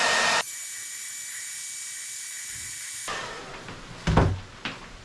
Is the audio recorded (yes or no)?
yes